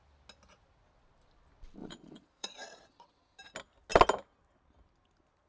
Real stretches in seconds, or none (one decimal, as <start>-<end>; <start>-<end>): 0.0-1.8; 3.4-5.5